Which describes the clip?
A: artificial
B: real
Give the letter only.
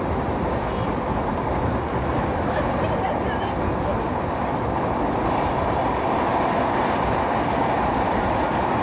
B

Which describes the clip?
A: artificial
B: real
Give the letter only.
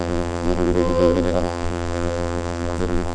A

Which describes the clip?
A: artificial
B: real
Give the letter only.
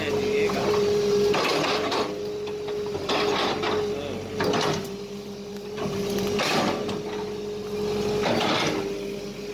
B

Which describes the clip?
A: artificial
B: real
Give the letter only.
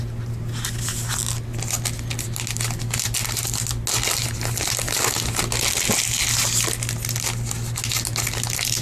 B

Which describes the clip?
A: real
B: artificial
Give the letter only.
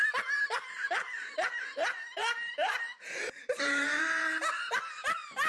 B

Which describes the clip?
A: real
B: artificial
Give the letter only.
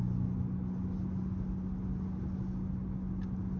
A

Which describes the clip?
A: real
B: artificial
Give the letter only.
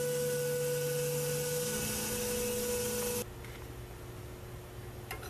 A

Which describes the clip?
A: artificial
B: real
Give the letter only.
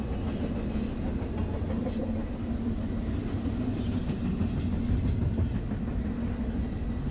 B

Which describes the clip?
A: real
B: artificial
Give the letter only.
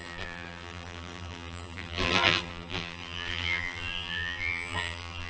B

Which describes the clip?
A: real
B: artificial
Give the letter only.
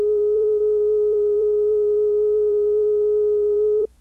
B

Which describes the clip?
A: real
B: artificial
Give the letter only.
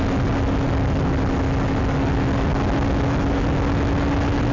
A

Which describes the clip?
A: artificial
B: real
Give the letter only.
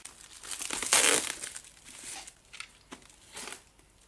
B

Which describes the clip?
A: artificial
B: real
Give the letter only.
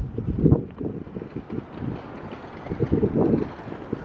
B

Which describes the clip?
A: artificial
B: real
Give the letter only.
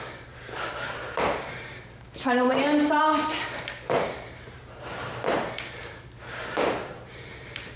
A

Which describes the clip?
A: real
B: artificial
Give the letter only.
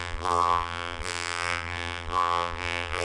B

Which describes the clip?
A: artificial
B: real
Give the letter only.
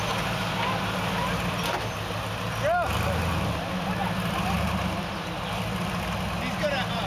B